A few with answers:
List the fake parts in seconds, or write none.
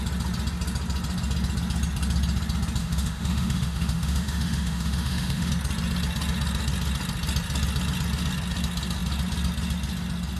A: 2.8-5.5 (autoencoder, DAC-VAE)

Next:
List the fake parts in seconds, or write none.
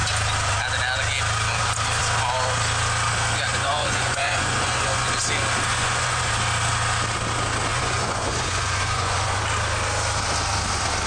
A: 3.5-5.1 (vocoder, Vocos); 5.7-6.3; 7.7-9.4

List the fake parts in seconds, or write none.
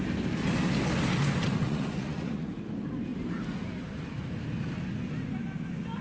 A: 1.6-2.5 (vocoder, Vocos)